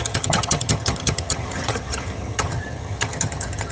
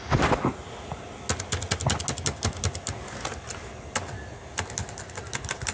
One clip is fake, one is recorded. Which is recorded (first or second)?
second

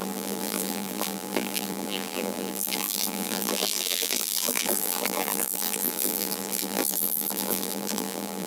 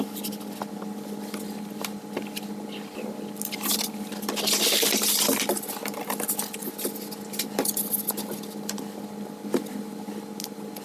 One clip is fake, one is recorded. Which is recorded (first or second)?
second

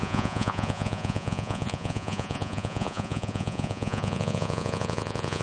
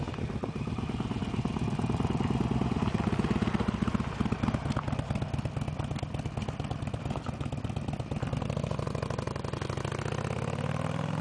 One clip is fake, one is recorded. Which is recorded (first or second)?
second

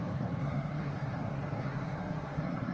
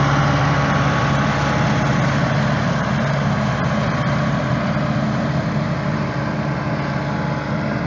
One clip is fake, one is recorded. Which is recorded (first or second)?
second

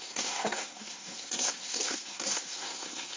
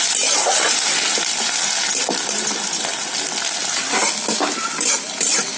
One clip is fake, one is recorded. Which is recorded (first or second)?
second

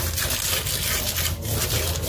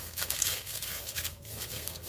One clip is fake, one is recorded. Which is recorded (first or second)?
first